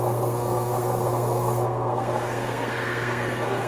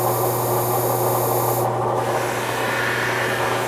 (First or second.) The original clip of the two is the second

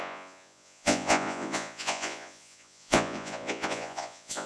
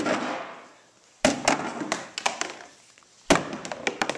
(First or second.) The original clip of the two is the second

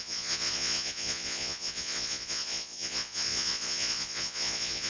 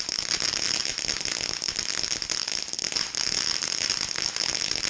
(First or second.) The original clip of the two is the second